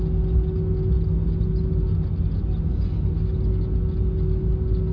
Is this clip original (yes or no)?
yes